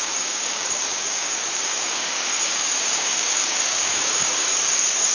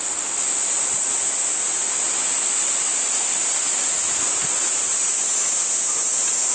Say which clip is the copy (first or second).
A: first